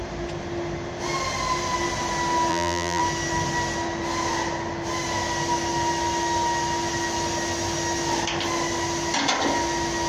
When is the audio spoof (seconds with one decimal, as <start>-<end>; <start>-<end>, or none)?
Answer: 2.5-3.0